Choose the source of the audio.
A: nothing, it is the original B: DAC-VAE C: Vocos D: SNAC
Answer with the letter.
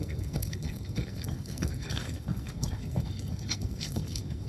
D